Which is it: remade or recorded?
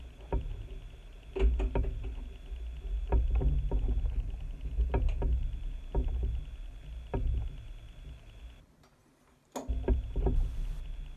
recorded